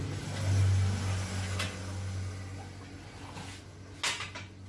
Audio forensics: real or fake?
real